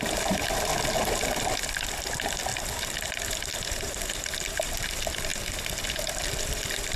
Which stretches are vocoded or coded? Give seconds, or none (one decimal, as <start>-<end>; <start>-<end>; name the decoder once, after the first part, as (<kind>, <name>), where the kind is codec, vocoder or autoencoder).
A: 0.0-0.7 (vocoder, BigVGAN v2); 1.4-7.0